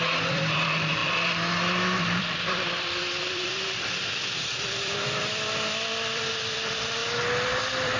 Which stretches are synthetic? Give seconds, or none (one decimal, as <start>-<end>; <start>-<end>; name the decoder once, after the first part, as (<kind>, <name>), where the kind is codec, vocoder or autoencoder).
0.0-7.0 (vocoder, BigVGAN v2); 7.6-8.0